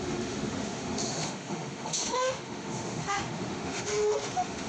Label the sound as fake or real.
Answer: fake